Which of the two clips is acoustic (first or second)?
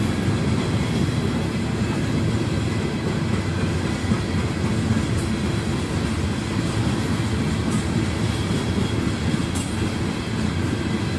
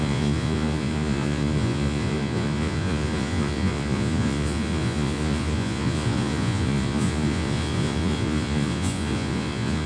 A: first